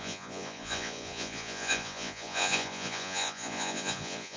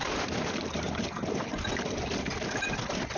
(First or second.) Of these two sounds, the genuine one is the second